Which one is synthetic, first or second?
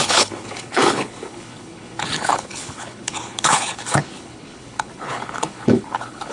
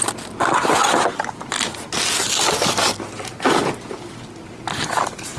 first